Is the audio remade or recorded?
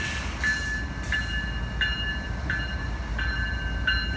recorded